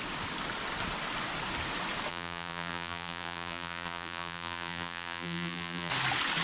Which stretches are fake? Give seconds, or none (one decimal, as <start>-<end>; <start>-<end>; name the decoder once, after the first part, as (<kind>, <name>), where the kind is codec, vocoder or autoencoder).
2.1-5.9 (vocoder, BigVGAN v2)